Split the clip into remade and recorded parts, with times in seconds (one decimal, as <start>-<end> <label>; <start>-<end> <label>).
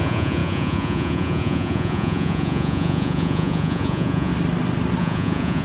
0.0-4.3 remade; 4.3-5.0 recorded; 5.0-5.6 remade